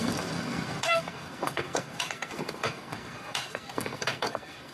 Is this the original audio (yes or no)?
no